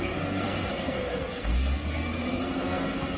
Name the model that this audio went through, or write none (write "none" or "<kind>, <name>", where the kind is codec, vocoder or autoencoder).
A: codec, SNAC